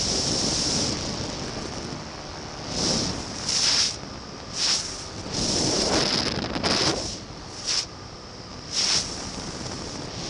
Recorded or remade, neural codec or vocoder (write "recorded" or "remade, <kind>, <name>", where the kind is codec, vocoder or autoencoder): recorded